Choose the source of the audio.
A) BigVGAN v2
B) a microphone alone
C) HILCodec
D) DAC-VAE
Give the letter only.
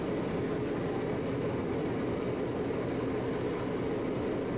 B